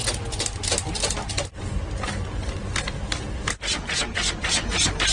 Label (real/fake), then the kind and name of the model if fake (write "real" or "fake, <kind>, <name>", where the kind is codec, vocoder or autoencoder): real